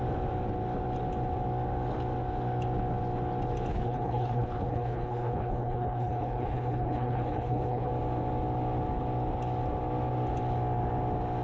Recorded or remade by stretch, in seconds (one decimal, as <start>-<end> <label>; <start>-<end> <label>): 0.0-3.7 recorded; 3.7-7.9 remade; 7.9-11.4 recorded